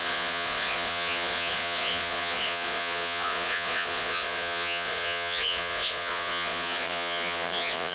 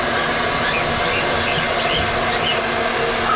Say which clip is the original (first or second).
second